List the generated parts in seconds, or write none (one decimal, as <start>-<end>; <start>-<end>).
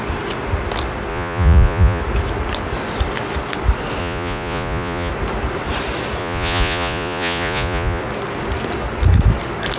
1.1-2.0; 4.0-5.1; 6.2-8.0